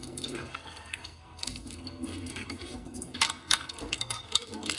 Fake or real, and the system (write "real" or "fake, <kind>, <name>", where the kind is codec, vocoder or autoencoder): fake, codec, SNAC